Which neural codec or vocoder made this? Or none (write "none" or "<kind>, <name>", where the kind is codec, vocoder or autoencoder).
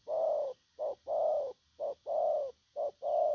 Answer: none